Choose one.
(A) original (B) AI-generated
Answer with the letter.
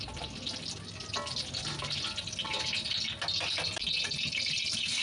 A